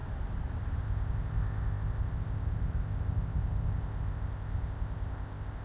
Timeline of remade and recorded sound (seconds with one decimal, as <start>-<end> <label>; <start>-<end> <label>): 0.0-0.8 recorded; 0.8-5.6 remade